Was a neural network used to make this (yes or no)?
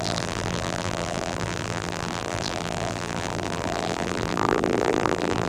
yes